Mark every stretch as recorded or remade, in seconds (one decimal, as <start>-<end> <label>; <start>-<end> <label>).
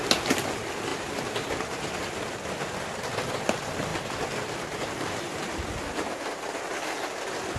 0.0-7.6 recorded